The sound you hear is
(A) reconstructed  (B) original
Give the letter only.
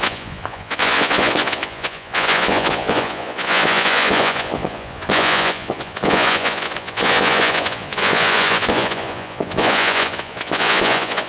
A